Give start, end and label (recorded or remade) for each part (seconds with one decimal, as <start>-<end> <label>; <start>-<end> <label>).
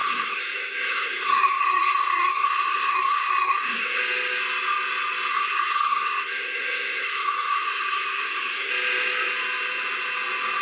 0.0-4.0 remade; 4.0-5.3 recorded; 5.3-8.7 remade; 8.7-10.6 recorded